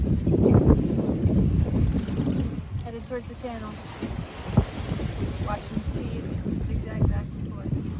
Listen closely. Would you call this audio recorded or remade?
recorded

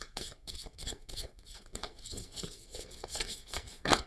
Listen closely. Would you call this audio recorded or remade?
remade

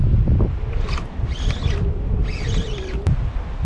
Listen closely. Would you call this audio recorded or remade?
recorded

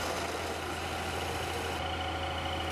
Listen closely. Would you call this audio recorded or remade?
recorded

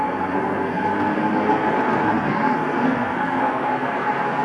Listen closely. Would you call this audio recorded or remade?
remade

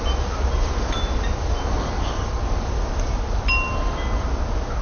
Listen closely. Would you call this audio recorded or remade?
recorded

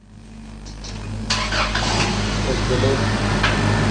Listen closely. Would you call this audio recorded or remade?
recorded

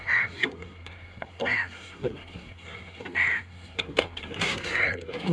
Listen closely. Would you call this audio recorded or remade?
remade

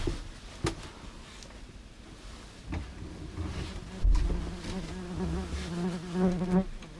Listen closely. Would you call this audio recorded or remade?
recorded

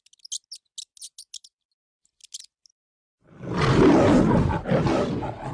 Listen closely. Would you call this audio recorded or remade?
recorded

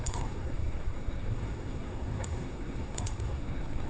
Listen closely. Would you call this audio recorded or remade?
remade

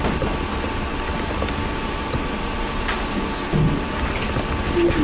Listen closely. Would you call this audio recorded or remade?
recorded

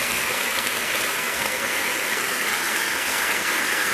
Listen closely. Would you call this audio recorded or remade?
remade